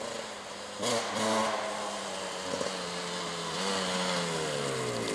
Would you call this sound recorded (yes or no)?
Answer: yes